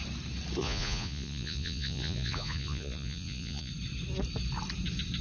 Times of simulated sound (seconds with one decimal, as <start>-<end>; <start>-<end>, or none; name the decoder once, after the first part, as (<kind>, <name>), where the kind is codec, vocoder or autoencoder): 0.6-3.7 (vocoder, Vocos)